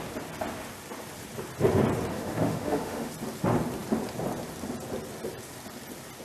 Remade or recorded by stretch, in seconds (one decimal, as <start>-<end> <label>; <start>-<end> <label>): 0.0-2.1 recorded; 2.1-3.1 remade; 3.1-6.2 recorded